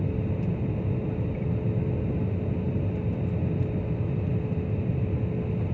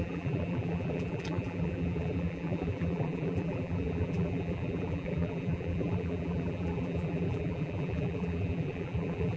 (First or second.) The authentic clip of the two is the first